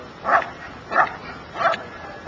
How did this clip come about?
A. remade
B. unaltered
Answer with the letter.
B